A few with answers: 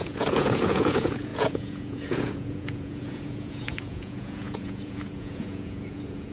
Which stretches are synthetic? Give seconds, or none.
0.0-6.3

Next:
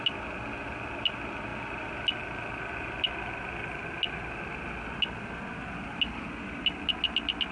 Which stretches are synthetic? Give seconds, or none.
none

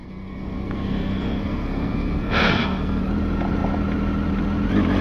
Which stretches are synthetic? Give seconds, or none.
0.0-3.0

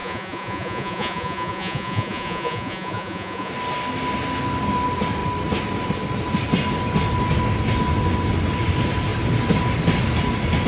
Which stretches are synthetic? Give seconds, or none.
0.0-3.5

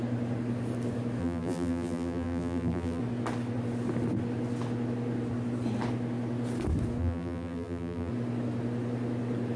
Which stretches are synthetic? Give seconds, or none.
1.2-3.0; 7.0-8.1